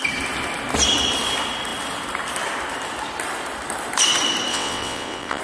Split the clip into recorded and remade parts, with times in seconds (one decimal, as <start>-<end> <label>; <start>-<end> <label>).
0.0-4.5 recorded; 4.5-5.4 remade